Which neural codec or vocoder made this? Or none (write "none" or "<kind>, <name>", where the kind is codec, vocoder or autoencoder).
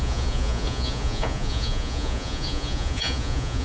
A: vocoder, Vocos